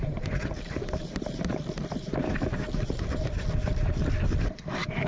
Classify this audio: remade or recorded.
remade